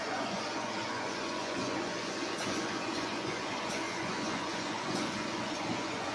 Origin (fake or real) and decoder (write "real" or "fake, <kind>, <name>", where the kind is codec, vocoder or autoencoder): fake, vocoder, Vocos